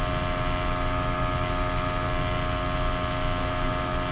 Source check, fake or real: real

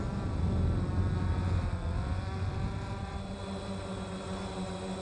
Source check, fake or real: real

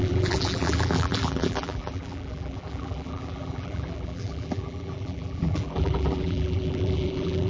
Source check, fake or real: fake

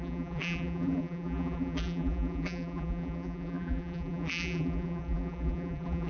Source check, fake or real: fake